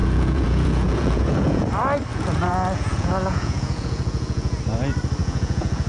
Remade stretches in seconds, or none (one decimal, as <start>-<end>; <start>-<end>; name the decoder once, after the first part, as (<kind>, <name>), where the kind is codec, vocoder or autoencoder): 0.0-1.7 (vocoder, Vocos); 2.1-4.6; 5.2-5.9